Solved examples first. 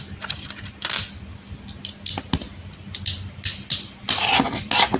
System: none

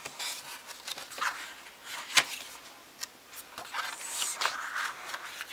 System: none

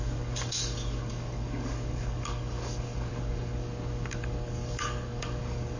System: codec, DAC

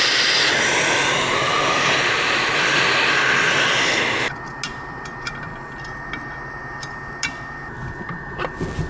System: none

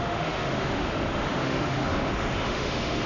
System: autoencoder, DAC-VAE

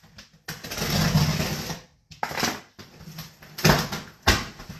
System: none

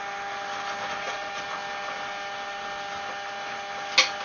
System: none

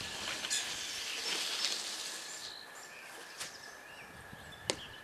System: none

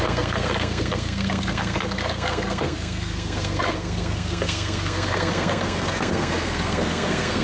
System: codec, SNAC